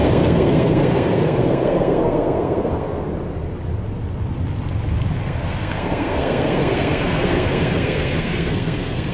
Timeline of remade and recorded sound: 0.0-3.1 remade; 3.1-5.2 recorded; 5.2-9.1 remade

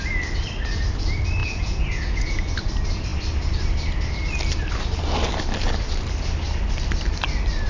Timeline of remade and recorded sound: 0.0-1.4 recorded; 1.4-2.3 remade; 2.3-7.7 recorded